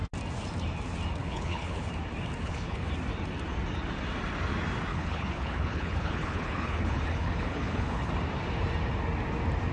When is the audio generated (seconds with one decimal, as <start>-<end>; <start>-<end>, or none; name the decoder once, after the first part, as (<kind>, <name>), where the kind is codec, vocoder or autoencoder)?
1.2-1.9 (codec, HILCodec); 2.4-2.9; 4.9-8.1